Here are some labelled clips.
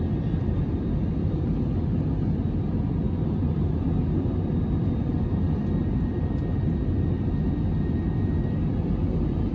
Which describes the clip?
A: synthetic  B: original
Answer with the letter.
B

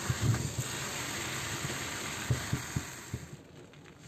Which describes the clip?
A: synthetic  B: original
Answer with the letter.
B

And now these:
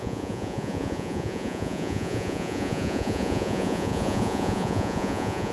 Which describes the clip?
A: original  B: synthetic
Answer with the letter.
B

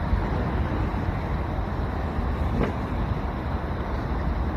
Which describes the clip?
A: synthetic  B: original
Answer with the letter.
B